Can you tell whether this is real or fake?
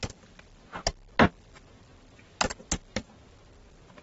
real